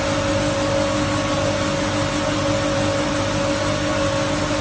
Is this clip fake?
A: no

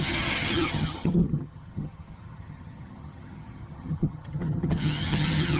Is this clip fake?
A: yes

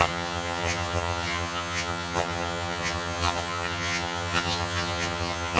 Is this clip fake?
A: yes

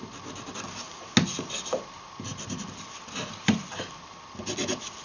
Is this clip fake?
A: no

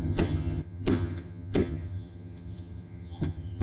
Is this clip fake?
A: yes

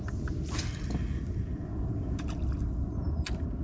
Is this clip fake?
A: no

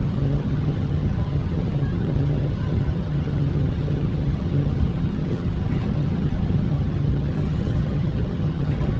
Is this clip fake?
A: yes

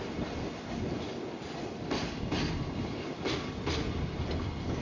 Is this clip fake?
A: no